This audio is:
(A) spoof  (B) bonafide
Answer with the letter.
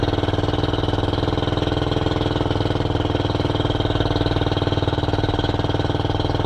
B